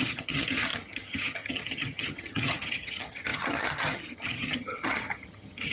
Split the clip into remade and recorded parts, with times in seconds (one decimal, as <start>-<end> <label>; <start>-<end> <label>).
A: 0.0-5.7 remade